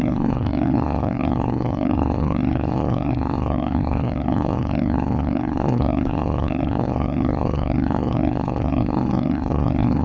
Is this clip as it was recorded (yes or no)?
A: no